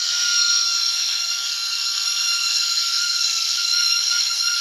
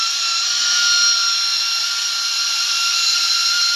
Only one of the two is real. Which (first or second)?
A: second